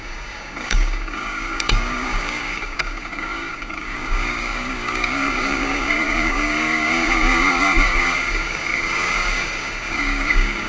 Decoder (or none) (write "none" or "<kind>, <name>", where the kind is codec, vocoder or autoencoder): codec, DAC